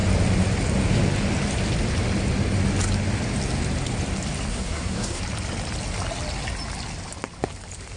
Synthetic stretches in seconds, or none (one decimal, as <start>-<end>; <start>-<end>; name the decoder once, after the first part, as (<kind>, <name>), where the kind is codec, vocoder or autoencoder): 4.5-5.2 (codec, SNAC)